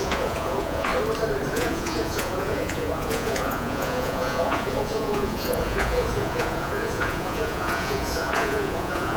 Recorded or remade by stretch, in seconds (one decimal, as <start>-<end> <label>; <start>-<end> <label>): 0.0-0.9 remade; 0.9-1.5 recorded; 1.5-9.2 remade